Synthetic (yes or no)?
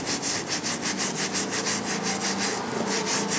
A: no